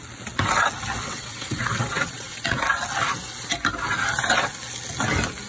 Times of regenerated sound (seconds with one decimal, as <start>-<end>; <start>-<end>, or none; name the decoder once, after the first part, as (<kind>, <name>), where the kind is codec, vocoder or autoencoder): 1.0-2.6 (vocoder, WaveNeXt)